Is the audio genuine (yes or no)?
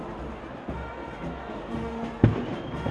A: yes